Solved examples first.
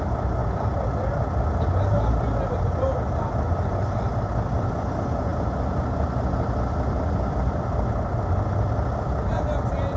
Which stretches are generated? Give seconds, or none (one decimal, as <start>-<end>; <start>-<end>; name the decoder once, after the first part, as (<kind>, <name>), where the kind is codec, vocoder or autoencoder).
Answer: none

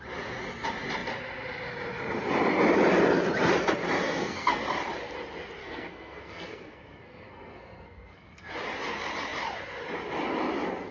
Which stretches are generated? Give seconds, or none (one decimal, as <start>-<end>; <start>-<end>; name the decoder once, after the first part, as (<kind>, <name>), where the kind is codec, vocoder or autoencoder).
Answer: 4.0-4.6 (codec, SNAC); 5.6-8.5

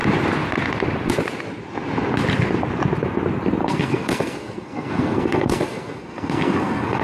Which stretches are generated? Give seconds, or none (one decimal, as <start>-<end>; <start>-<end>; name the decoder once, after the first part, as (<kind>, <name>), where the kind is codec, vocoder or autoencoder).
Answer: 3.6-7.0 (codec, SNAC)

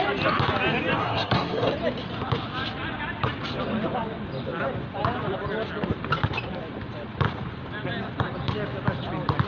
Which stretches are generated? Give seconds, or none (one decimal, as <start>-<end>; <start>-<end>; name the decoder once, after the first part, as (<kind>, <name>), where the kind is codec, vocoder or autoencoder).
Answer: 1.0-1.7 (codec, SNAC)

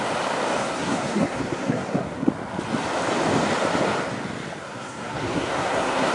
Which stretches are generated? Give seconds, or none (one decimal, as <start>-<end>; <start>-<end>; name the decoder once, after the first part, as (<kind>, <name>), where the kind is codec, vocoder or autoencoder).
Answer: 0.6-2.3 (codec, SNAC); 4.6-6.1

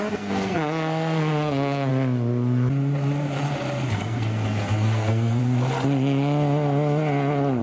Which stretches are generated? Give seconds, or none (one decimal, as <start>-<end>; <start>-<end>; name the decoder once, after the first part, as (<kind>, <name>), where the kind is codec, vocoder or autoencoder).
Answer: 0.0-1.9 (codec, SNAC); 3.9-5.4

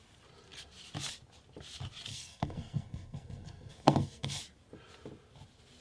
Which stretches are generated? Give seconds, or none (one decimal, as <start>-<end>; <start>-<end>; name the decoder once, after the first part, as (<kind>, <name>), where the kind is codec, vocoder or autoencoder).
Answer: 2.1-4.4 (codec, SNAC)